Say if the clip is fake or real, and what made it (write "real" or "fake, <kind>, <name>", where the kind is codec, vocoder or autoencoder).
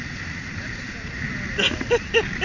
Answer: real